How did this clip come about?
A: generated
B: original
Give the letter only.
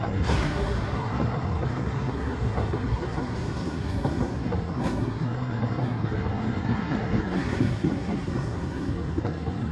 A